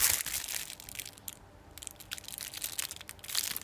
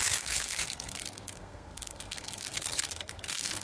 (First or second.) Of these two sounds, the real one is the first